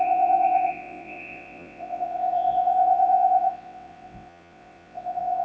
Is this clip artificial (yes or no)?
yes